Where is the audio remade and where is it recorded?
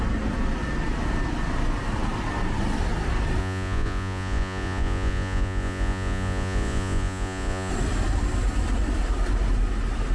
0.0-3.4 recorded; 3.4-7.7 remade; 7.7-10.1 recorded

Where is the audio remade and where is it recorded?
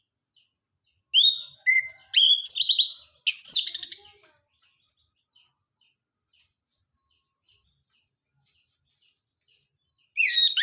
0.0-10.6 recorded